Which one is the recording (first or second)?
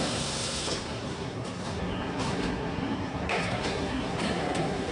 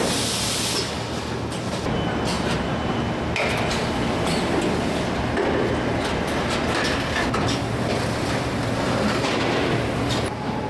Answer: second